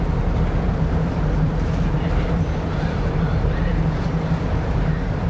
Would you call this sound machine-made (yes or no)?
yes